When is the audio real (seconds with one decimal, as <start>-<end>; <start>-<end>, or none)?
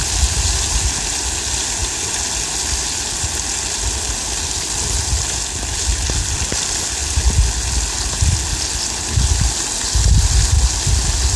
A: 0.0-11.4